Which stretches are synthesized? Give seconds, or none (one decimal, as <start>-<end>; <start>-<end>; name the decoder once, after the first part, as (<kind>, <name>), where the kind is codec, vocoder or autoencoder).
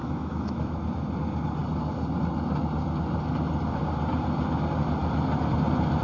0.0-0.8 (autoencoder, DAC-VAE)